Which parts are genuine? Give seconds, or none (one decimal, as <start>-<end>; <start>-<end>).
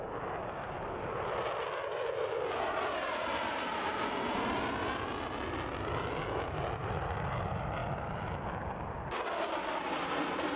0.0-10.6